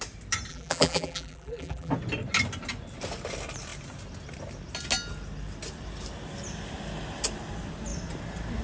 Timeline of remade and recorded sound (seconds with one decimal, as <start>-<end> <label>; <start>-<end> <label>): 0.0-0.5 recorded; 0.5-1.9 remade; 1.9-8.6 recorded

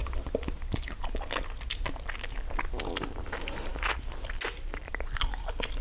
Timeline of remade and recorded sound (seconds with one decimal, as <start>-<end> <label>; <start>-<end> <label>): 0.0-2.4 recorded; 2.4-3.7 remade; 3.7-4.8 recorded; 4.8-5.8 remade